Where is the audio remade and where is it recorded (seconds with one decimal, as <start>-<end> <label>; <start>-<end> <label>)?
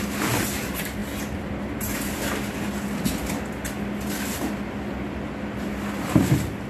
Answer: 0.0-6.7 recorded